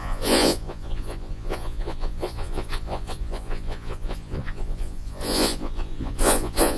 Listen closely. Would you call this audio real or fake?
fake